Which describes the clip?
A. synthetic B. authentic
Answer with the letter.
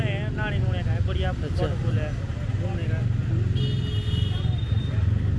B